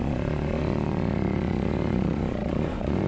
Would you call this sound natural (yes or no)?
no